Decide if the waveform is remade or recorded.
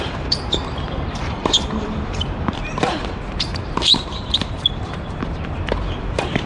remade